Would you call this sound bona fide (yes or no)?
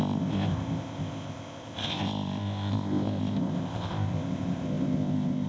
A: no